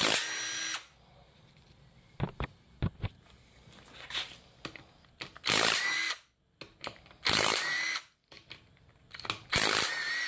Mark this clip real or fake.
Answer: real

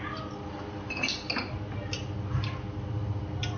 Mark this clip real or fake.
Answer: real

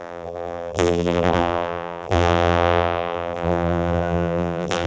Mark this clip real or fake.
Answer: fake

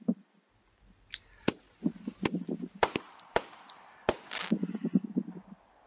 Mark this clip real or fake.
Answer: real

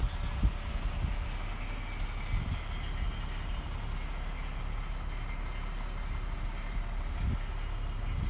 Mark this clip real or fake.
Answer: real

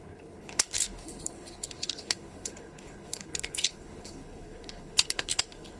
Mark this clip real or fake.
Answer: fake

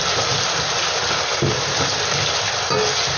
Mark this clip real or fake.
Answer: real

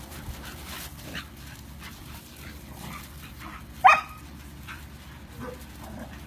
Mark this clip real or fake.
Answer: fake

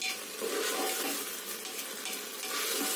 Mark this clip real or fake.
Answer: real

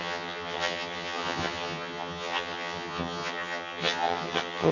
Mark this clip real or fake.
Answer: fake